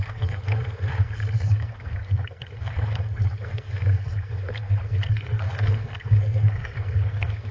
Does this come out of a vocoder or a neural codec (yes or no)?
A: yes